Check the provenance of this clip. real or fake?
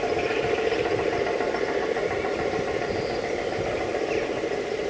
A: real